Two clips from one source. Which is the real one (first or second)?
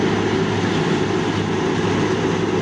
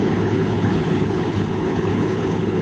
first